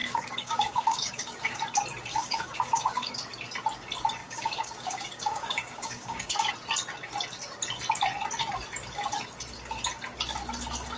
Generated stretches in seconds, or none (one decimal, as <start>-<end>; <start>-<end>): 0.0-1.6; 2.1-3.1; 4.2-6.5